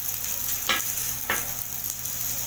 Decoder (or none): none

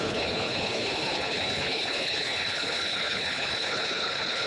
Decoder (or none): codec, HILCodec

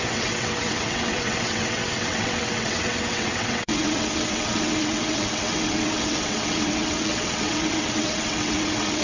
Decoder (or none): vocoder, WaveNeXt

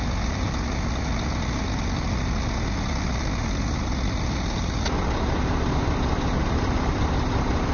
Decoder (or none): none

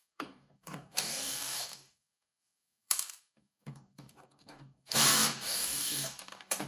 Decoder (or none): codec, DAC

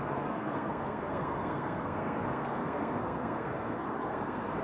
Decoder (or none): codec, SNAC